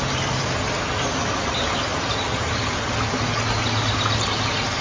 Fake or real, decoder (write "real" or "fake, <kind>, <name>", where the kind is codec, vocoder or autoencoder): real